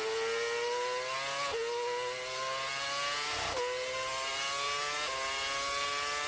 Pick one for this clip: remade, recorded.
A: recorded